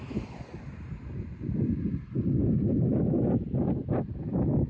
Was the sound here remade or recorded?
recorded